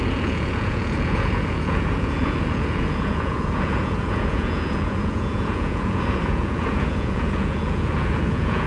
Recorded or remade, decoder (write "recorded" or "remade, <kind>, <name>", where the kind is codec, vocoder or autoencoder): remade, vocoder, Vocos